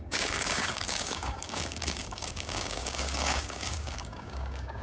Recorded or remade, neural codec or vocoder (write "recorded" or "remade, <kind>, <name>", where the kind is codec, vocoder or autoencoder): remade, codec, DAC